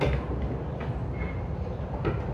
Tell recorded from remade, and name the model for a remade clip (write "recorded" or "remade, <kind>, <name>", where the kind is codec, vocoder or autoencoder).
recorded